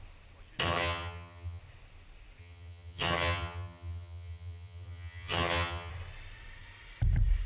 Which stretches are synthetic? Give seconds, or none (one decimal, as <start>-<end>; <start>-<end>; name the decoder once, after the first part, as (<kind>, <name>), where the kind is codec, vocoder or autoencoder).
0.6-1.6 (vocoder, HiFi-GAN); 2.4-5.9